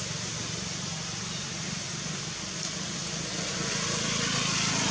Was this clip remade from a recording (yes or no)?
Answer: no